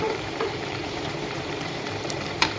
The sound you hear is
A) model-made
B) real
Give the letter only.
A